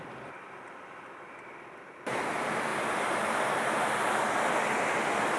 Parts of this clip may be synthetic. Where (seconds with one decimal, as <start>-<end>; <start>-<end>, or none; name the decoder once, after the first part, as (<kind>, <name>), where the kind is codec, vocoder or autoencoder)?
none

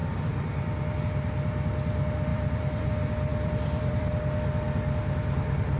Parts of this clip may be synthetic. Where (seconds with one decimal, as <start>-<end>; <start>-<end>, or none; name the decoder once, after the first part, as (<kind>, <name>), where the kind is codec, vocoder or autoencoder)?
2.3-2.9 (vocoder, BigVGAN v2); 3.3-4.1